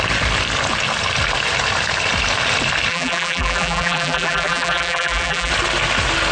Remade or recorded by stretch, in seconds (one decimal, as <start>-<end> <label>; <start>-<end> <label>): 0.0-2.9 recorded; 2.9-5.5 remade; 5.5-6.3 recorded